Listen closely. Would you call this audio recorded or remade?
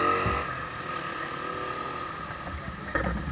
remade